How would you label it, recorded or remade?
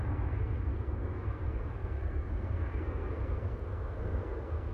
remade